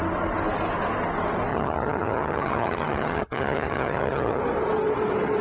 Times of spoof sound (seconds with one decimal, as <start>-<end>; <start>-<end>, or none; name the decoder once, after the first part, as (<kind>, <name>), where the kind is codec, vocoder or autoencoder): 1.5-4.4 (vocoder, HiFi-GAN)